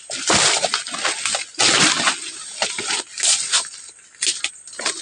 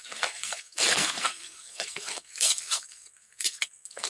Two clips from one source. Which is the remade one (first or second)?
second